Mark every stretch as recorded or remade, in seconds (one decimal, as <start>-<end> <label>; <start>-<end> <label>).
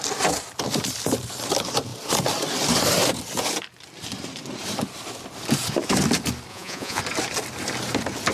0.0-6.5 recorded; 6.5-7.0 remade; 7.0-8.3 recorded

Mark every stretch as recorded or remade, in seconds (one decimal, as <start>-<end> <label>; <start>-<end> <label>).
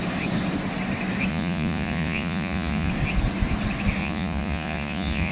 0.0-1.3 recorded; 1.3-2.9 remade; 2.9-4.0 recorded; 4.0-5.3 remade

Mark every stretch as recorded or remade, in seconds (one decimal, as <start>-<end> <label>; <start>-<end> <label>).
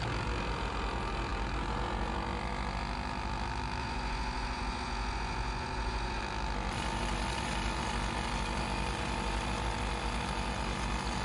0.0-3.8 recorded; 3.8-6.2 remade; 6.2-11.2 recorded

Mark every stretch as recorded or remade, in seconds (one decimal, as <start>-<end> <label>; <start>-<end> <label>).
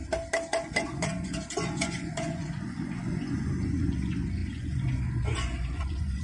0.0-0.5 recorded; 0.5-6.2 remade